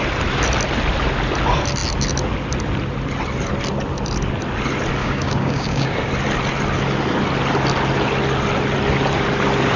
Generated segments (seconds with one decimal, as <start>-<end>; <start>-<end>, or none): 5.0-6.1